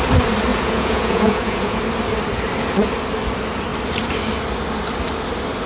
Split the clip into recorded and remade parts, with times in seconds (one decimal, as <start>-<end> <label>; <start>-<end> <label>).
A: 0.0-0.5 recorded; 0.5-1.8 remade; 1.8-5.7 recorded